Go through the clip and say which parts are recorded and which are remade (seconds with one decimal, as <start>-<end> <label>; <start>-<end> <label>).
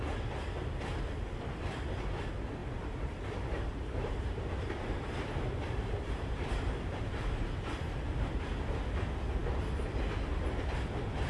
0.0-2.6 recorded; 2.6-7.9 remade; 7.9-11.3 recorded